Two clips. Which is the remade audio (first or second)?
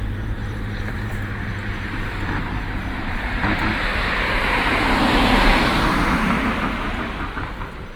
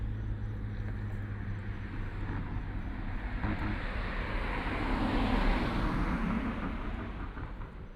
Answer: first